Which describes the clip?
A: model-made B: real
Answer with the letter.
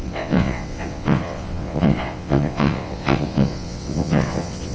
A